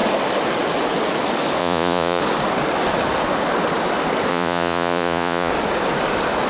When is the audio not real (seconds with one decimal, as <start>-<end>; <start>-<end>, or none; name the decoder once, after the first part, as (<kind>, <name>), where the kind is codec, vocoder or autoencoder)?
1.6-2.2 (vocoder, Vocos); 4.3-5.5

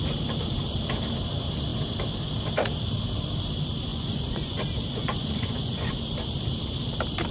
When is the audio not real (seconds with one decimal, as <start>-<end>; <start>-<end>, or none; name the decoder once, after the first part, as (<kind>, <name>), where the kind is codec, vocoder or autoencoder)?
3.9-4.6 (vocoder, Vocos); 5.0-5.9

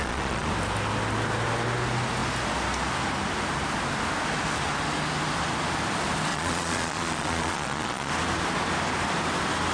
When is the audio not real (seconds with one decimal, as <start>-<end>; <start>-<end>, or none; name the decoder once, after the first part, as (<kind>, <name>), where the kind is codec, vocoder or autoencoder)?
0.0-0.5 (vocoder, Vocos); 6.3-8.1